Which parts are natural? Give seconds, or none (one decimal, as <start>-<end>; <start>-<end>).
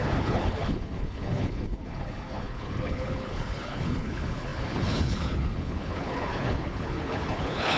none